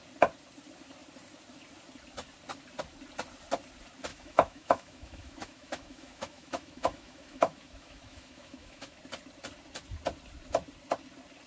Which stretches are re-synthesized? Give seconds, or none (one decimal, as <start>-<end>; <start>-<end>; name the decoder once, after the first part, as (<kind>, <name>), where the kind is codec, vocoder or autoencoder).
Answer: 4.1-9.0 (autoencoder, DAC-VAE)